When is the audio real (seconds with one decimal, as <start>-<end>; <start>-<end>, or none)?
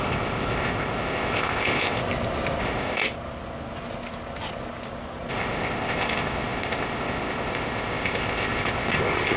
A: 2.0-2.6; 3.0-5.3